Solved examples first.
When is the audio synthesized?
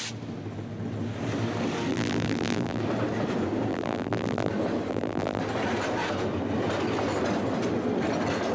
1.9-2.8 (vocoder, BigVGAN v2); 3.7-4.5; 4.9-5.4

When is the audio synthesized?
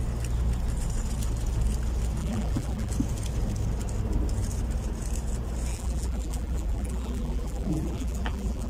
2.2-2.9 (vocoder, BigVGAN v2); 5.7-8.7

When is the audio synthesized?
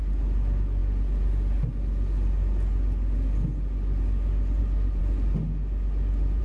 none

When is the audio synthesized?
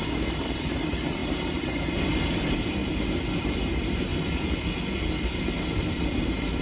0.0-2.8 (vocoder, BigVGAN v2); 3.4-4.1; 5.8-6.6